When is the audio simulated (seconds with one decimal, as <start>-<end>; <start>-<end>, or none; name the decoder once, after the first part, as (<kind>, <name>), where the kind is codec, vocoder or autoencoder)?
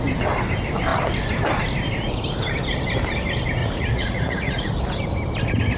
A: 3.6-4.7 (vocoder, Vocos)